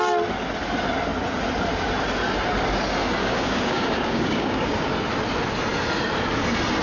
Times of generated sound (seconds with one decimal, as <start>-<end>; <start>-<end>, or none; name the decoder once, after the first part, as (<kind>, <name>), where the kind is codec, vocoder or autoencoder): 3.2-4.9 (codec, DAC)